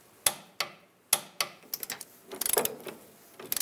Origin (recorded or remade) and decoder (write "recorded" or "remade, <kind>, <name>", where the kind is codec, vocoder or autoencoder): recorded